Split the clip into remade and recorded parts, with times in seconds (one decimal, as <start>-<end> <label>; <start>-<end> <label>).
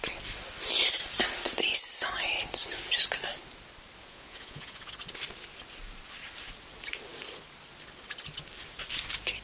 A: 0.0-4.0 recorded; 4.0-4.9 remade; 4.9-9.4 recorded